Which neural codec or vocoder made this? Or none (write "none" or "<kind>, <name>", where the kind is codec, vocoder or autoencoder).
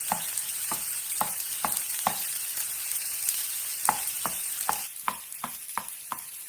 vocoder, BigVGAN v2